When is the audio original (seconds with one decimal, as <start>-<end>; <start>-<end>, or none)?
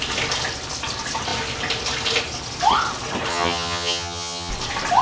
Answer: 0.0-3.3; 4.5-5.0